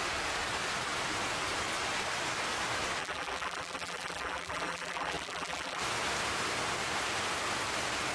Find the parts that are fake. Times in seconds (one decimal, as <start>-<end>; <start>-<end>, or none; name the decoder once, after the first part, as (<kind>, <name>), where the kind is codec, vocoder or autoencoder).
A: 3.0-5.8 (vocoder, BigVGAN v2)